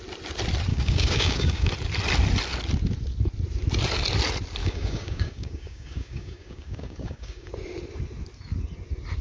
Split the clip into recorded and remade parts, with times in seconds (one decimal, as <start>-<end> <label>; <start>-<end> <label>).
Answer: 0.0-0.7 recorded; 0.7-1.7 remade; 1.7-4.6 recorded; 4.6-7.5 remade; 7.5-9.2 recorded